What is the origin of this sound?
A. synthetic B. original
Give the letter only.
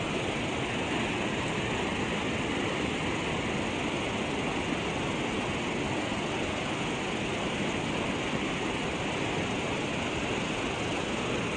B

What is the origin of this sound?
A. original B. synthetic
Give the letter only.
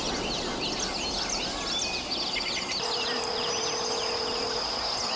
A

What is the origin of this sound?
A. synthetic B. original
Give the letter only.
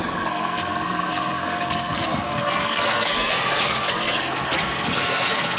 A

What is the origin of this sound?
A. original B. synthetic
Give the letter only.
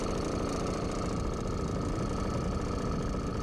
A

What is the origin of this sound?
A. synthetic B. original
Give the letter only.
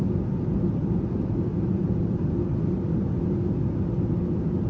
B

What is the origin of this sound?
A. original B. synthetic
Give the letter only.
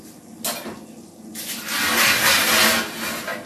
A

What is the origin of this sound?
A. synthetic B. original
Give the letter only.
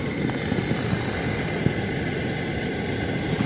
B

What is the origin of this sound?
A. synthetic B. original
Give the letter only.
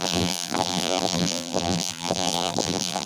A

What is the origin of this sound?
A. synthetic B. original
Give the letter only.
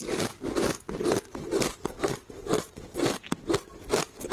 B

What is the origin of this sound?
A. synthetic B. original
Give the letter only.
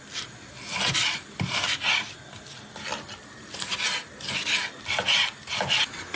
B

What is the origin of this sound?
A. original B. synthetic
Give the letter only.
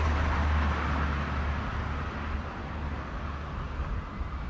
A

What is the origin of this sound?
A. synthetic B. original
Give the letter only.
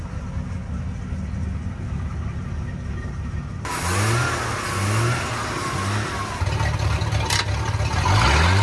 B